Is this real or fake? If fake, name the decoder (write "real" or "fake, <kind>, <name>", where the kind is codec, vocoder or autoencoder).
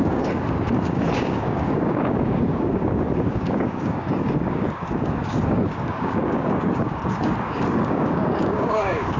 fake, codec, DAC